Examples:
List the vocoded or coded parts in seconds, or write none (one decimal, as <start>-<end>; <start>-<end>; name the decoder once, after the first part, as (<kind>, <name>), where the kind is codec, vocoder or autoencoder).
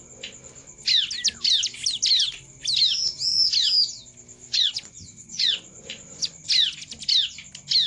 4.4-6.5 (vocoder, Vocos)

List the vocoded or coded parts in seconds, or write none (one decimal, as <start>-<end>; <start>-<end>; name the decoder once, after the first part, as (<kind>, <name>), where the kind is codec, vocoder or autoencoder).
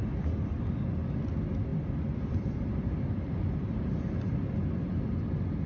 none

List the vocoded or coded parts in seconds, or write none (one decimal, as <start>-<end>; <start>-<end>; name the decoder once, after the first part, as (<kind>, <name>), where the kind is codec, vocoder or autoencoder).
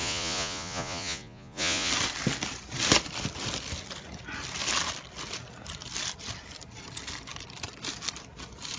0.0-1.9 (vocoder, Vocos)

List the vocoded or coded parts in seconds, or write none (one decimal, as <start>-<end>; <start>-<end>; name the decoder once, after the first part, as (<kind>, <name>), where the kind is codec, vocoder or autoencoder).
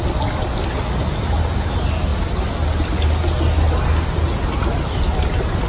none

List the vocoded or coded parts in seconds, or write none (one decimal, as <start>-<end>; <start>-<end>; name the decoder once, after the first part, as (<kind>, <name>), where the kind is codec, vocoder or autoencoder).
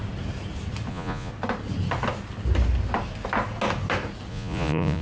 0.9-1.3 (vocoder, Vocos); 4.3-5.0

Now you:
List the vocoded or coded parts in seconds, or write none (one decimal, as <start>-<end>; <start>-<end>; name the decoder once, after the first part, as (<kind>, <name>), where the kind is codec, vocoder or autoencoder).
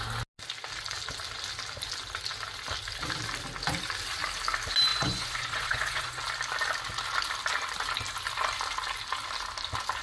4.9-6.2 (vocoder, Vocos)